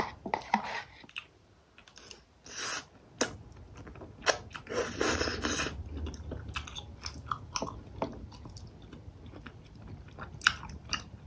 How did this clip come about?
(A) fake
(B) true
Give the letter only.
B